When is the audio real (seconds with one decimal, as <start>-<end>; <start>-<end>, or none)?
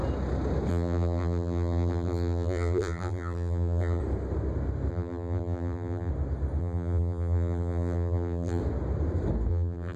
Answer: 0.0-0.7; 4.0-4.9; 6.1-6.6; 8.6-9.5